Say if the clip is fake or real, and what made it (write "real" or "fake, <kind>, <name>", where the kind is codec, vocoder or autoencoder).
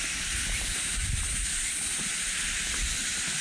real